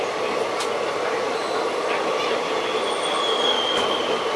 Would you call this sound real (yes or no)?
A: yes